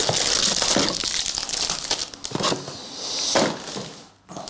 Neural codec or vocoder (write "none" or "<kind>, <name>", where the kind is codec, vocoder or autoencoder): none